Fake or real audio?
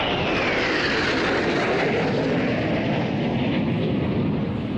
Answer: real